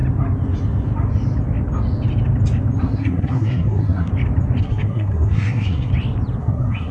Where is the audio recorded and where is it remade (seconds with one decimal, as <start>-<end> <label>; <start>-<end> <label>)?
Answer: 0.0-2.8 recorded; 2.8-4.1 remade; 4.1-4.6 recorded; 4.6-5.9 remade; 5.9-6.4 recorded; 6.4-6.9 remade